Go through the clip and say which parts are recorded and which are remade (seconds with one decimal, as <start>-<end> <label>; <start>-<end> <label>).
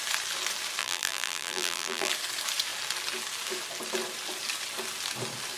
0.0-0.8 recorded; 0.8-2.1 remade; 2.1-5.6 recorded